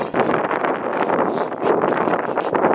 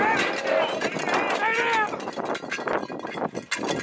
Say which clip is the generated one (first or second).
first